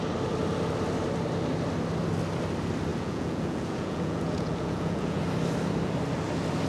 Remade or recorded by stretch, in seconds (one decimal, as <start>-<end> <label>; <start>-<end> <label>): 0.0-2.9 recorded; 2.9-5.2 remade; 5.2-6.7 recorded